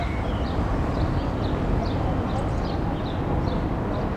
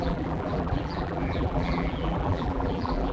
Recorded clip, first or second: first